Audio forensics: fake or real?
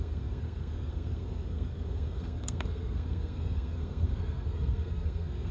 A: fake